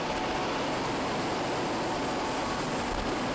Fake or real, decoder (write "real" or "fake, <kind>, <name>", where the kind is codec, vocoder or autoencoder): real